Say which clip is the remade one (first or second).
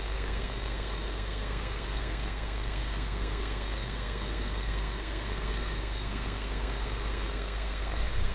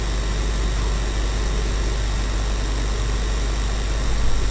first